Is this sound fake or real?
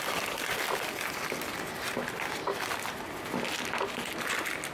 real